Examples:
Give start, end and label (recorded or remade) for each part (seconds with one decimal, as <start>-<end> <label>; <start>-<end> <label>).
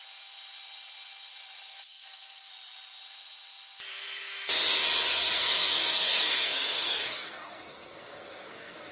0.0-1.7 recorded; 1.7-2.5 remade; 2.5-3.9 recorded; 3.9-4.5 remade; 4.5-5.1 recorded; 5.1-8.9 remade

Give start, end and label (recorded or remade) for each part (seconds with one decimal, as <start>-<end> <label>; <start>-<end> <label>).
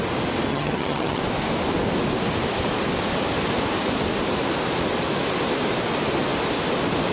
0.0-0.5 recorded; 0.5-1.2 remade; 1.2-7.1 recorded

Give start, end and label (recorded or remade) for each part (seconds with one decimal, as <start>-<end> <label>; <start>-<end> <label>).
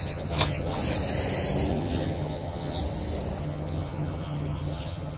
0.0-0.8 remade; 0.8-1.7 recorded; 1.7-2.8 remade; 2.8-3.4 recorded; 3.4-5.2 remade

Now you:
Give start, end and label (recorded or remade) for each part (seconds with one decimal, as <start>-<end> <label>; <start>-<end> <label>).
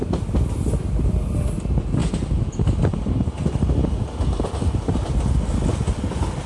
0.0-6.5 recorded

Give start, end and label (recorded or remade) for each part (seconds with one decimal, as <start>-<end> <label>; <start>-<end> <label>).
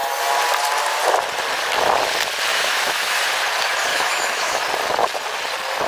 0.0-2.5 recorded; 2.5-3.2 remade; 3.2-3.9 recorded; 3.9-4.6 remade; 4.6-5.9 recorded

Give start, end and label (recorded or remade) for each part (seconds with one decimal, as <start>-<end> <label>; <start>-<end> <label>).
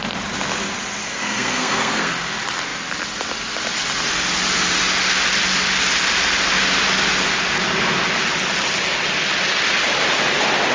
0.0-1.0 recorded; 1.0-2.1 remade; 2.1-10.7 recorded